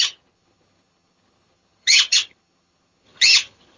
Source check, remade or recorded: remade